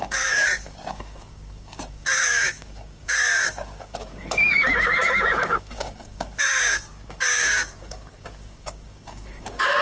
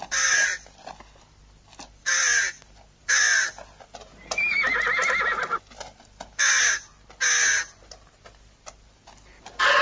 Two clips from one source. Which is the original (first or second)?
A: second